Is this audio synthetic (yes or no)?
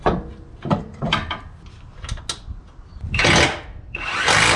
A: no